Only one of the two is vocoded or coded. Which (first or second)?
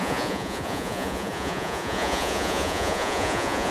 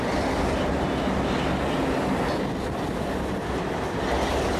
first